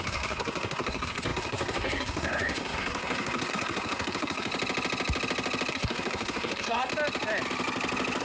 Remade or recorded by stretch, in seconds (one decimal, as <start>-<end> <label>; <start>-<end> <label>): 0.0-4.5 remade; 4.5-5.7 recorded; 5.7-6.9 remade; 6.9-8.2 recorded